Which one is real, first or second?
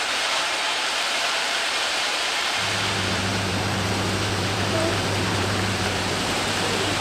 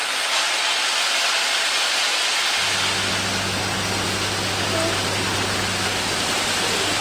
second